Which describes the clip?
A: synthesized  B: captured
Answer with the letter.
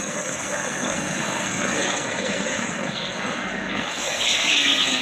A